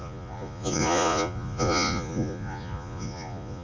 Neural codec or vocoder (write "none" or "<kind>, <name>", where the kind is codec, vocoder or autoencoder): vocoder, Vocos